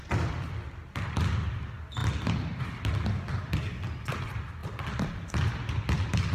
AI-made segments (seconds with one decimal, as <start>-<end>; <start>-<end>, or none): none